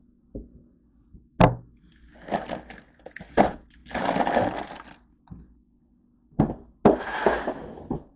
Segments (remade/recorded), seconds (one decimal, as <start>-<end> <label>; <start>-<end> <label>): 0.0-8.2 recorded